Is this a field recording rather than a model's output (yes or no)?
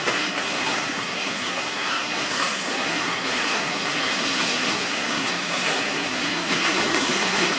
no